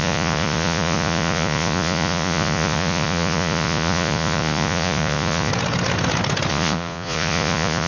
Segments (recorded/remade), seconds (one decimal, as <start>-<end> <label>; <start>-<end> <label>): 0.0-5.5 remade; 5.5-6.5 recorded; 6.5-7.9 remade